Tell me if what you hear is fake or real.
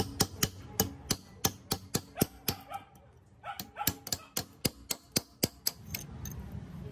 real